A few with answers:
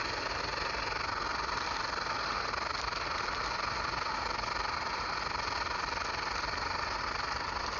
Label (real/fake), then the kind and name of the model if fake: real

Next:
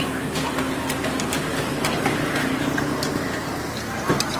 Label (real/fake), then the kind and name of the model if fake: real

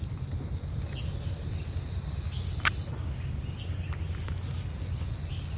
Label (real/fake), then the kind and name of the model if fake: real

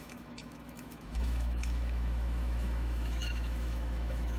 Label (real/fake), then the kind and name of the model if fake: fake, autoencoder, DAC-VAE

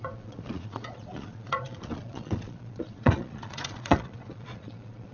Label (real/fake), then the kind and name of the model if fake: fake, vocoder, Vocos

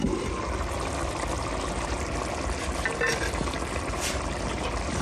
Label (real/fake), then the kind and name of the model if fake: real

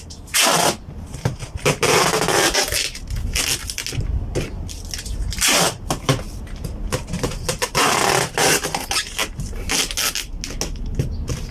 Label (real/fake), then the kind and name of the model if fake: real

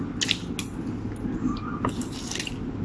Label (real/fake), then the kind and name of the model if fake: real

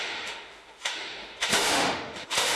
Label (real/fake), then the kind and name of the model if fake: fake, autoencoder, DAC-VAE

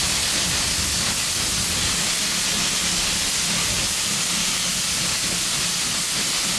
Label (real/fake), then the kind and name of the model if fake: real